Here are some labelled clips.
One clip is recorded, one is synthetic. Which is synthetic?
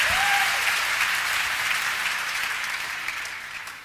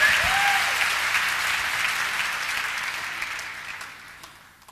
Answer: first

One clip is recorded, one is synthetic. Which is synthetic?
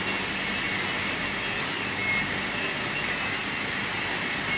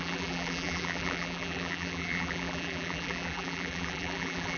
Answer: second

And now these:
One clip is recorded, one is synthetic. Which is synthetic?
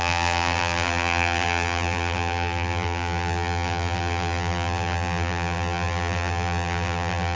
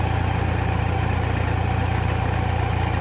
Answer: first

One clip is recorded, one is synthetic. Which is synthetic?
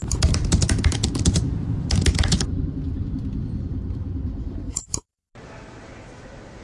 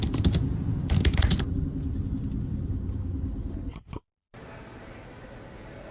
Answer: first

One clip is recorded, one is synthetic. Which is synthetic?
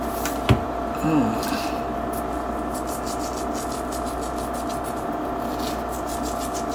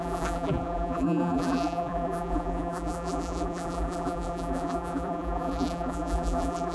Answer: second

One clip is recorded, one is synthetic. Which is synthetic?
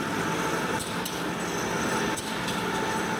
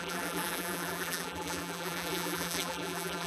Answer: second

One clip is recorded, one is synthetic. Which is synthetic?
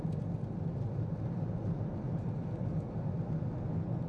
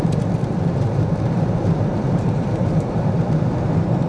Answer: second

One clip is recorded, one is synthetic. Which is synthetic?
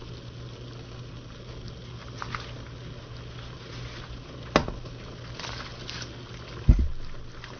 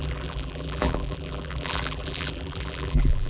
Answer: second